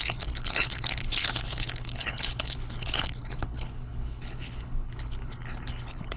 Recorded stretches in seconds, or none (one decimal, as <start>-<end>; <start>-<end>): none